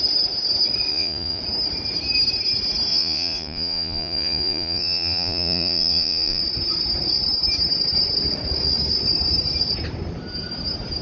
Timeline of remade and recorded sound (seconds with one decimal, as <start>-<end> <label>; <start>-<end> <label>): 0.0-0.9 recorded; 0.9-1.4 remade; 1.4-2.9 recorded; 2.9-6.4 remade; 6.4-11.0 recorded